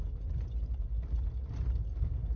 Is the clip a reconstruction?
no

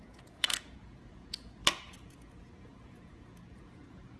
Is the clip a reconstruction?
yes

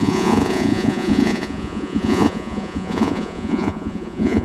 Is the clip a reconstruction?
yes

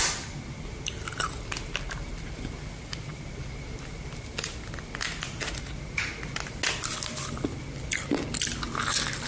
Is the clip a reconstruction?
no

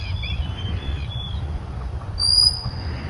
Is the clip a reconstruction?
yes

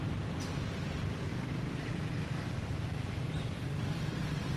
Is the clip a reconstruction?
no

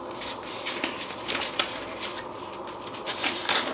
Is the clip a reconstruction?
no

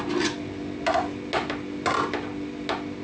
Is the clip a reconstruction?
no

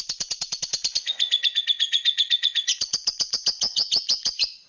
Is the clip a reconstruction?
yes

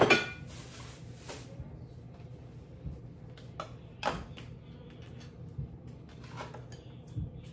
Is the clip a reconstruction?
no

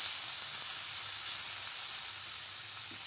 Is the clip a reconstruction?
no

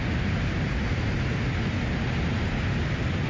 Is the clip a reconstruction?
no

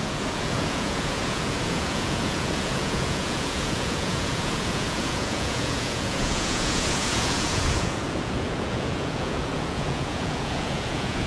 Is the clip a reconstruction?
yes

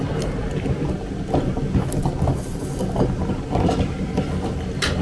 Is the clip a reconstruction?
no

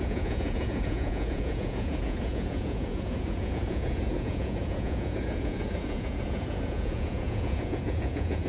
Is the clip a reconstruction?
yes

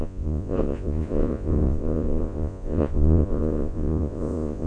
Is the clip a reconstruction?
yes